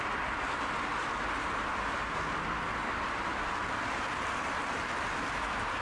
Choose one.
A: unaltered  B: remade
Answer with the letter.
A